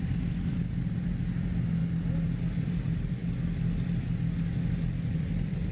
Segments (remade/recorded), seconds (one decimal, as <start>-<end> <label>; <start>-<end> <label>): 0.0-1.8 remade; 1.8-2.6 recorded; 2.6-3.2 remade; 3.2-5.1 recorded; 5.1-5.7 remade